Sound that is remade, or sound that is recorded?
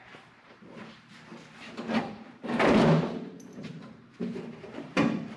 remade